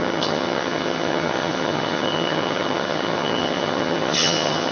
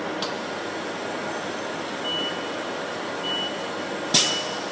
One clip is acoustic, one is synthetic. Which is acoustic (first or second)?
second